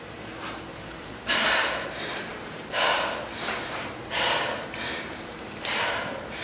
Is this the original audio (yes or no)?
no